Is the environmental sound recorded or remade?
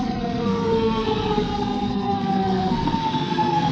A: remade